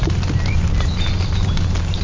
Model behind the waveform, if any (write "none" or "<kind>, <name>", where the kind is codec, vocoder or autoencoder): vocoder, BigVGAN v2